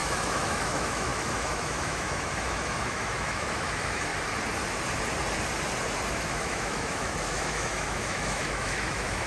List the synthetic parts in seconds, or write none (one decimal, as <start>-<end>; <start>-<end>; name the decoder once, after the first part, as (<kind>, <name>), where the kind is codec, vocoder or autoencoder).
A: 0.0-4.1 (autoencoder, DAC-VAE); 6.1-9.3